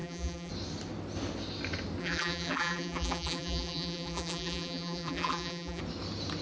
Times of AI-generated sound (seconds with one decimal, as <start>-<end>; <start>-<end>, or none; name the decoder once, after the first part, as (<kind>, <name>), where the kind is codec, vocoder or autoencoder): 0.0-0.5 (vocoder, BigVGAN v2); 2.0-5.8